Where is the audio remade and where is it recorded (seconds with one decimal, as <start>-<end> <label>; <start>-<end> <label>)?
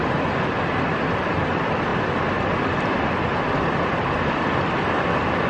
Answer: 0.0-5.5 recorded